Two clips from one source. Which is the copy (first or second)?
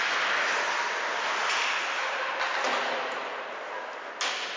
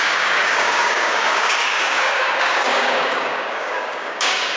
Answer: second